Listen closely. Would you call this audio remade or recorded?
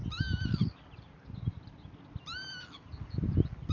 recorded